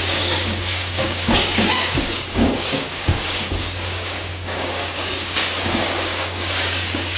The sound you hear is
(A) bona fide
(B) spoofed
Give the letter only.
B